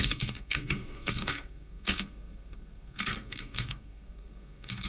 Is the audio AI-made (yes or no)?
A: yes